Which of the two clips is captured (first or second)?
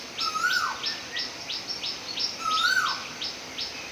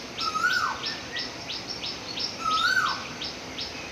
first